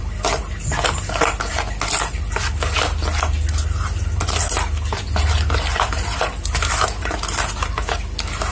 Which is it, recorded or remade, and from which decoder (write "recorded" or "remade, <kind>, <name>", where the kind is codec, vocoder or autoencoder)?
recorded